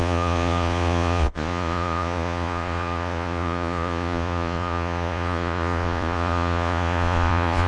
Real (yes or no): no